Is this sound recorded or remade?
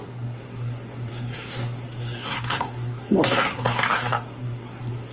remade